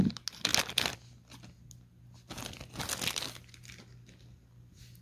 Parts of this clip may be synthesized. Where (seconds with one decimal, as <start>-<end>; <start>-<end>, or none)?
none